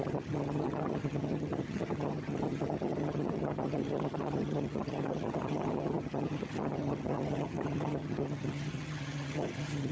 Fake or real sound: fake